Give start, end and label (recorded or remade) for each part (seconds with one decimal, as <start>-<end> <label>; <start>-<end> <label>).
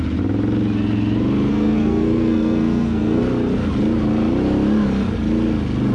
0.0-1.5 recorded; 1.5-3.2 remade; 3.2-5.9 recorded